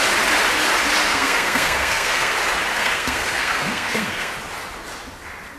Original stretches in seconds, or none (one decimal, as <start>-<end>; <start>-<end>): 0.0-1.1; 2.3-2.7; 4.3-5.6